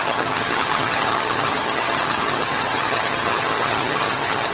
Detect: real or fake fake